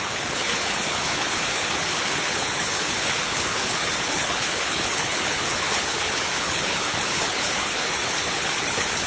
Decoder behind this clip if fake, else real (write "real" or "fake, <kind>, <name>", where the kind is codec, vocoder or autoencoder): fake, codec, HILCodec